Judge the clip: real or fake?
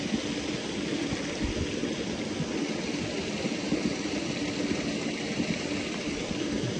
real